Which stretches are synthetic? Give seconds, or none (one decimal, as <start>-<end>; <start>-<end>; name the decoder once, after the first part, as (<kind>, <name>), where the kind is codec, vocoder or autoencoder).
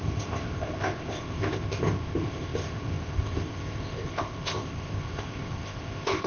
0.0-6.3 (codec, ZipCodec)